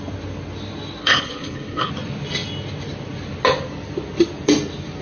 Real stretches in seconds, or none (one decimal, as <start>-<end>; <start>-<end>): 0.0-1.0; 1.9-5.0